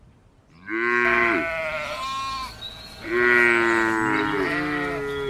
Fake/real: real